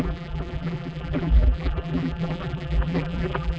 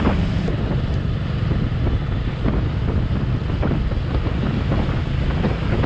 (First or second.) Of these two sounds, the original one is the second